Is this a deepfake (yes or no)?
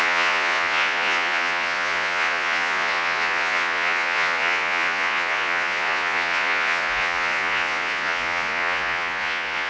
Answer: yes